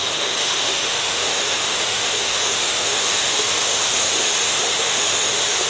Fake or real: fake